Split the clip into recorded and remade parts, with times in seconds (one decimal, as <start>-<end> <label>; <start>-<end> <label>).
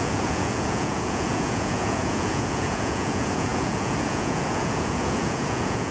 0.0-5.9 remade